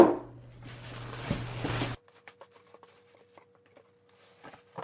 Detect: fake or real real